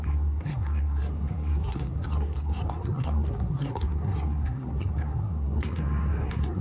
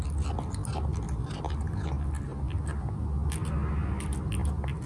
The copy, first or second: first